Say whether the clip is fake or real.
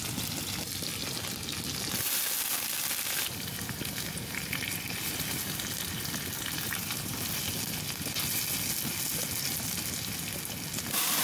real